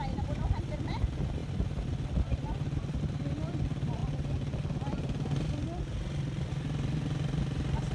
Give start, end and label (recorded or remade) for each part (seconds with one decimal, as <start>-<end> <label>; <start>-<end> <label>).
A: 0.0-7.9 recorded